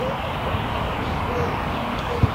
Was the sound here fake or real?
fake